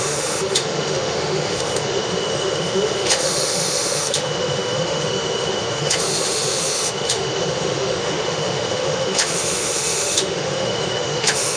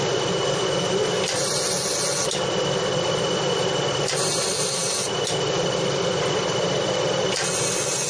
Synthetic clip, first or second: first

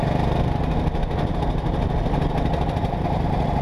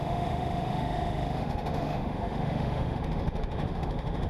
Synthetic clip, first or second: second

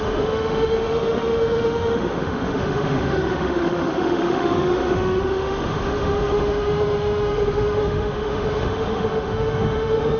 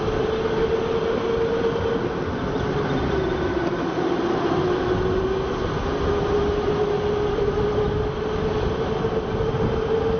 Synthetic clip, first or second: first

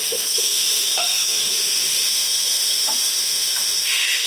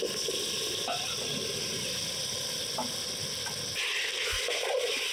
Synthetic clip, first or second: first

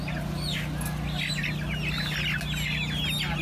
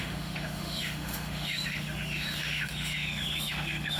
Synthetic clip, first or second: second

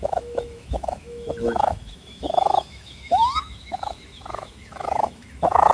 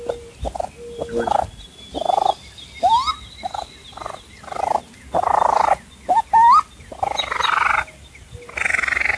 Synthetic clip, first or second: first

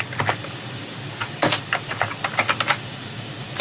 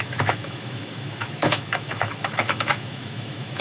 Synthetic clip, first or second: second